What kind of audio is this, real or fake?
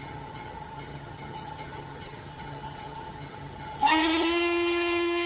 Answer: fake